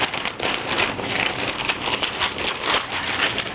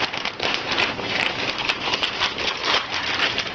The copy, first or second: second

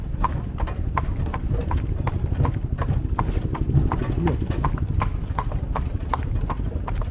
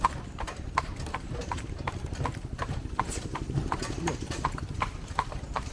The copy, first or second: second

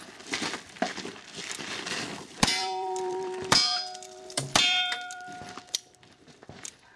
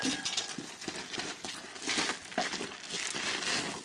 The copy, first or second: first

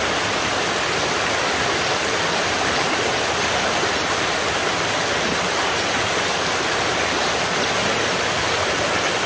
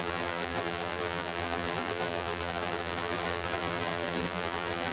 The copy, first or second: second